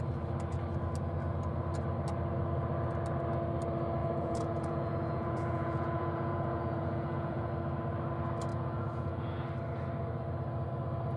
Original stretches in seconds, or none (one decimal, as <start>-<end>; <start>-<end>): 0.0-4.0; 7.5-8.5; 9.5-11.2